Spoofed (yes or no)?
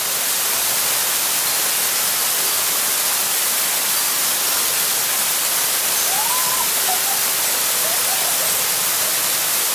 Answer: no